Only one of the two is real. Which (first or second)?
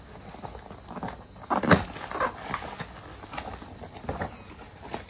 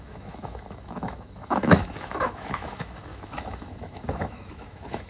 first